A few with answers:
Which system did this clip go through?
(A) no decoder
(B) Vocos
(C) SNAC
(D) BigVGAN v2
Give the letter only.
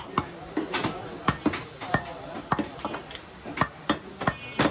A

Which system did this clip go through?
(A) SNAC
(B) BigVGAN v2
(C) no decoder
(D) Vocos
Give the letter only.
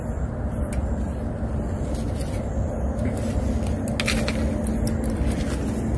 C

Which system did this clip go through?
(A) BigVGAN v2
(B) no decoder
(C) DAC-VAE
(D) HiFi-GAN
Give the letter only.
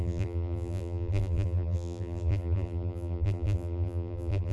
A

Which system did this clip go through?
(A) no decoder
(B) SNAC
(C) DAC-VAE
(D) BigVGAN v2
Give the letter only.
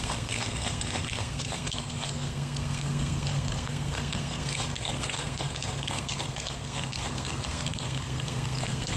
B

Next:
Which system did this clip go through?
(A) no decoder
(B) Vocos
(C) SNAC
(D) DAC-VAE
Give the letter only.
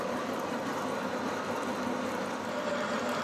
A